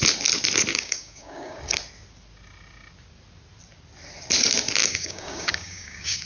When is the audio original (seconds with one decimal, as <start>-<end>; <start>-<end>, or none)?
0.0-0.7; 1.6-4.8

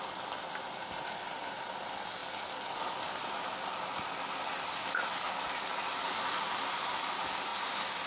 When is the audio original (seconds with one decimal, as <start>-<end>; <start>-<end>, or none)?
0.0-8.1

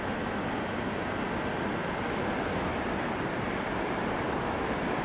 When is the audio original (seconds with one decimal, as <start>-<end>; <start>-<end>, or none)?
0.0-1.8; 4.2-5.0